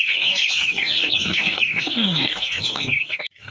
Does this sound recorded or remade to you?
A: remade